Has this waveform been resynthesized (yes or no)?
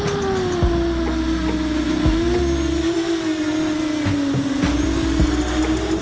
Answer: no